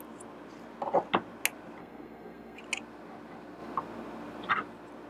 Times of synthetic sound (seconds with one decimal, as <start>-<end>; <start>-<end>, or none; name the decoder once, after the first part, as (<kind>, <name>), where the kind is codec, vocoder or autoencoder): 1.8-2.6 (codec, SNAC)